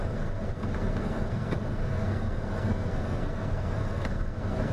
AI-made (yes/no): yes